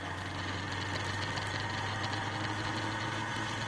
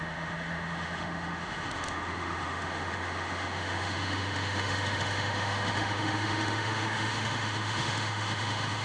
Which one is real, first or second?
first